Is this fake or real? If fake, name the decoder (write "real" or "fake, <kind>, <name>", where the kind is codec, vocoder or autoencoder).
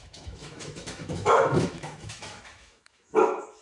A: fake, autoencoder, DAC-VAE